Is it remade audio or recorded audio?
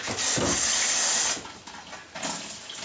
recorded